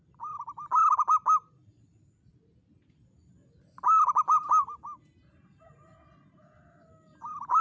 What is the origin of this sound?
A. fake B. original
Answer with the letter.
B